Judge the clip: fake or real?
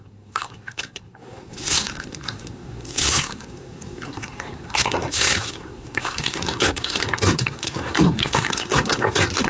fake